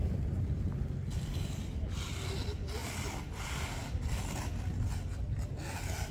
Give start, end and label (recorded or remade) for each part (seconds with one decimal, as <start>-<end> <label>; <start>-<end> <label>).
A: 0.0-6.1 recorded